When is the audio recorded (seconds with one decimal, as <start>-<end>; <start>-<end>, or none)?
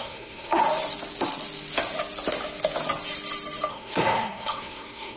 0.6-3.7